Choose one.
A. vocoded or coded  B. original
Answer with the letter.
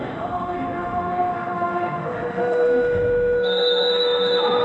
A